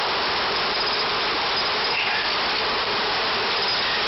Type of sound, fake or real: real